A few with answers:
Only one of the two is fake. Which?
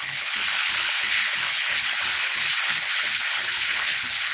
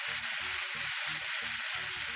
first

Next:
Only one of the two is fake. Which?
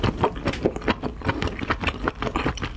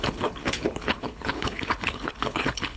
second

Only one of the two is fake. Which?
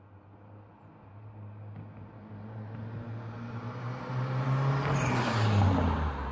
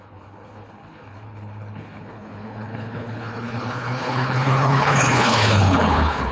second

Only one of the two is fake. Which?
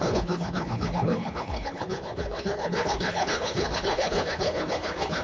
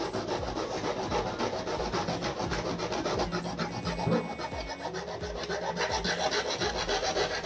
first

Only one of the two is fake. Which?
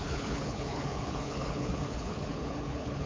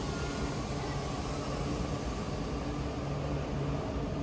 first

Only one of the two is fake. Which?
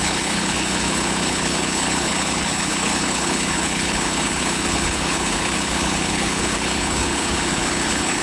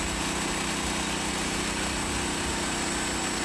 first